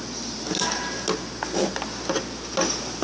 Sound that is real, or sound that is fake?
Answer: real